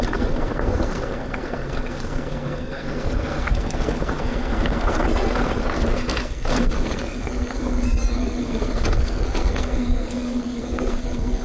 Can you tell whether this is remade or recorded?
remade